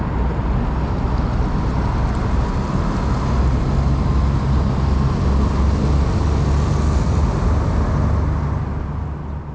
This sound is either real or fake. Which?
real